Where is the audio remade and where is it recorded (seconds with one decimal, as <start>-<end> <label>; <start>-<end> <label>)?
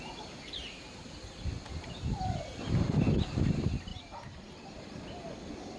0.0-2.5 recorded; 2.5-3.2 remade; 3.2-3.9 recorded; 3.9-4.5 remade; 4.5-5.8 recorded